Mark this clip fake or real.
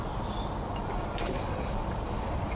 fake